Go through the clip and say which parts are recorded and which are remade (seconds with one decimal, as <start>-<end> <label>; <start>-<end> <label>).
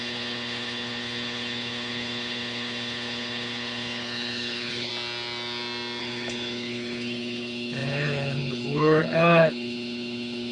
0.0-4.9 remade; 4.9-6.0 recorded; 6.0-10.5 remade